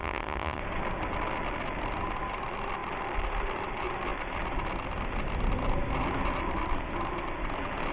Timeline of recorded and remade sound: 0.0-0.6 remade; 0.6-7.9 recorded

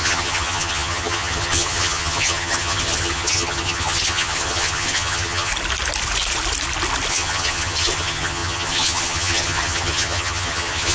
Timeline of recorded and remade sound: 0.0-5.5 remade; 5.5-7.1 recorded; 7.1-10.9 remade